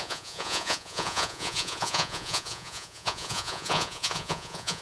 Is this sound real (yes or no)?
no